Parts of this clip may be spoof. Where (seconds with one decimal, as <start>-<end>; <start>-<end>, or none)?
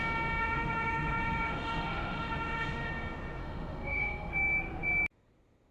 0.4-2.9; 3.4-4.3